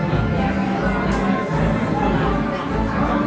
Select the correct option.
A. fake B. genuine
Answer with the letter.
B